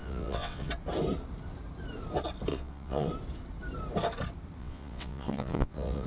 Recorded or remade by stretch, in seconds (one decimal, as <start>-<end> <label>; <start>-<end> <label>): 0.0-0.7 remade; 0.7-2.5 recorded; 2.5-3.1 remade; 3.1-4.6 recorded; 4.6-6.1 remade